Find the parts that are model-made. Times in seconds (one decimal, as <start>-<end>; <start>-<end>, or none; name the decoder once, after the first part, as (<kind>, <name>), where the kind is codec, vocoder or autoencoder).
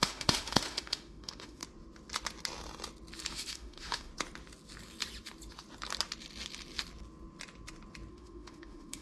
0.0-1.6 (autoencoder, DAC-VAE); 3.3-4.1; 8.1-9.0